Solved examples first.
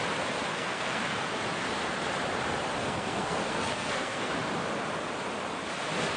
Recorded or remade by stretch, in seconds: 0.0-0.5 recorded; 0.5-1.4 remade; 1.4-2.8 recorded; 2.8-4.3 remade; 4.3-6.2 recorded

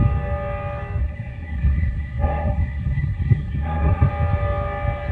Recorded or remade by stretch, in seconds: 0.0-1.0 recorded; 1.0-4.1 remade; 4.1-5.1 recorded

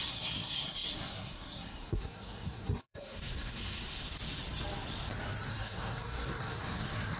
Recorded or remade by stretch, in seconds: 0.0-4.1 remade; 4.1-5.5 recorded; 5.5-7.2 remade

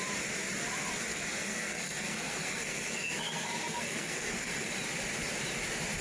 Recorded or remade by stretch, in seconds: 0.0-1.1 recorded; 1.1-4.7 remade; 4.7-6.0 recorded

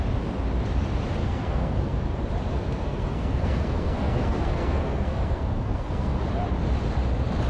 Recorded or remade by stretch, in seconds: 0.0-1.2 recorded; 1.2-2.0 remade; 2.0-2.5 recorded; 2.5-6.2 remade; 6.2-7.5 recorded

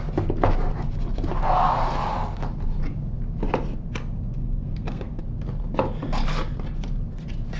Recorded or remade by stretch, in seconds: 0.0-4.4 recorded; 4.4-5.2 remade; 5.2-7.6 recorded

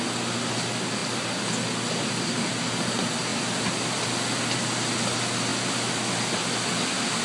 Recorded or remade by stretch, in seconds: 0.0-7.2 recorded

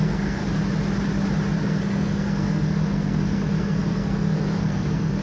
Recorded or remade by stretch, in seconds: 0.0-0.4 remade; 0.4-1.6 recorded; 1.6-5.2 remade